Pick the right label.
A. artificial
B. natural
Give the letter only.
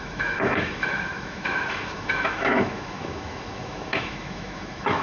A